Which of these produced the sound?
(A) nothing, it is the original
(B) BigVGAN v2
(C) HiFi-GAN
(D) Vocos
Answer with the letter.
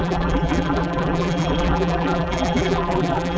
B